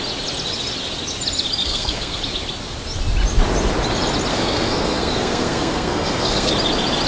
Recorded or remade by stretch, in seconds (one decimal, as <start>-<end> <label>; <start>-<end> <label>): 0.0-1.6 recorded; 1.6-2.2 remade; 2.2-4.3 recorded; 4.3-6.5 remade; 6.5-7.1 recorded